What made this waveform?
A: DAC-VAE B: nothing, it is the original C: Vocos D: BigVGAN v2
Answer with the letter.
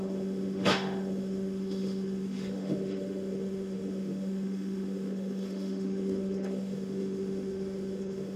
A